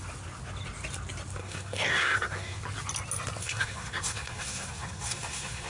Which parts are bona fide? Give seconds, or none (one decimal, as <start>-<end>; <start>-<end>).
0.0-1.4; 2.6-3.4